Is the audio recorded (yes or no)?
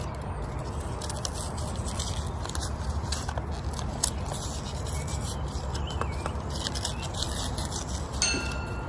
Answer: yes